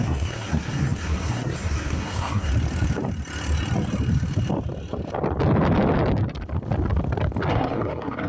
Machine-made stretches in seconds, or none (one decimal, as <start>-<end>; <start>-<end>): 0.0-2.5; 7.5-8.3

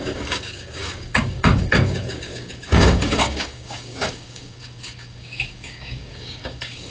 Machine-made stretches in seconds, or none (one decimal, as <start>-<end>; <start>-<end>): 0.0-6.9

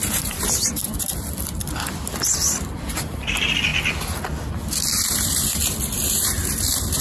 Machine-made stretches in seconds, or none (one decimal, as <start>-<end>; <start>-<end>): 0.0-3.7; 4.5-7.0

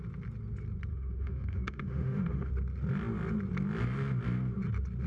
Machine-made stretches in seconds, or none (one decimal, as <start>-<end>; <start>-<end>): 0.9-2.5

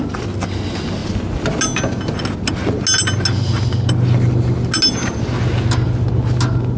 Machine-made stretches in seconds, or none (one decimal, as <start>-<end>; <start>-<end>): none

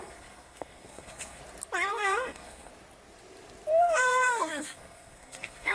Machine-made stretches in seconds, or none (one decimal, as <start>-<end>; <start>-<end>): 0.0-1.4; 1.9-2.7; 3.8-5.7